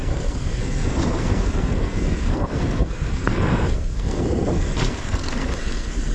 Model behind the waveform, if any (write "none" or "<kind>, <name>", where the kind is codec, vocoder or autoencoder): codec, SNAC